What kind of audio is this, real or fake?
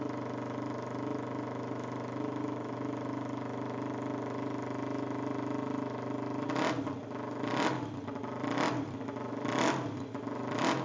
real